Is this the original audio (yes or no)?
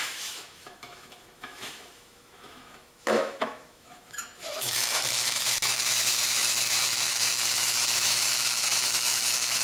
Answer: no